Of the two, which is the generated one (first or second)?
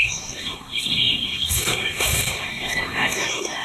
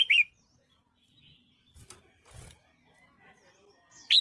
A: first